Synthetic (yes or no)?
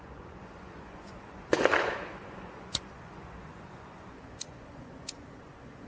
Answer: yes